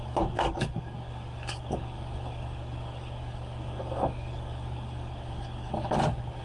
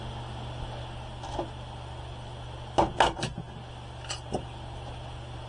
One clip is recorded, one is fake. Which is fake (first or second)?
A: first